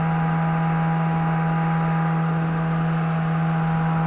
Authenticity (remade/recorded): recorded